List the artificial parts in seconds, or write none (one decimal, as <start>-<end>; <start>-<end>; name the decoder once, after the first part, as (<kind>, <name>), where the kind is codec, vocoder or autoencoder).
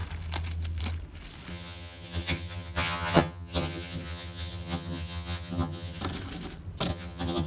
1.5-6.0 (vocoder, HiFi-GAN); 6.9-7.5